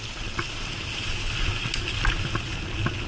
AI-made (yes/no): no